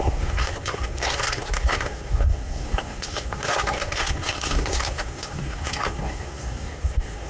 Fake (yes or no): yes